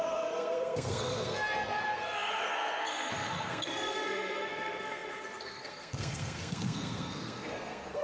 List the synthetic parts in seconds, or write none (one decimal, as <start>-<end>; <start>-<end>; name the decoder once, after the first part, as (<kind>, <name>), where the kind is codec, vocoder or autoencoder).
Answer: 0.0-8.0 (codec, SNAC)